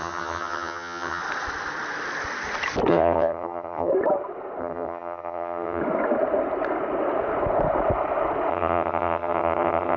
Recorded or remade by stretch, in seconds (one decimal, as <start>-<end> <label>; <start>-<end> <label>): 0.0-1.2 remade; 1.2-2.9 recorded; 2.9-3.9 remade; 3.9-4.6 recorded; 4.6-5.8 remade; 5.8-8.5 recorded; 8.5-10.0 remade